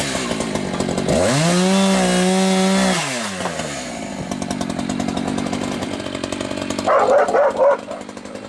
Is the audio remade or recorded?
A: recorded